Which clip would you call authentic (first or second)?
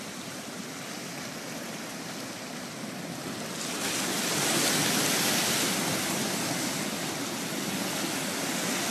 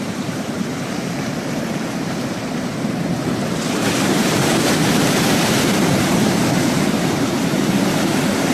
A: first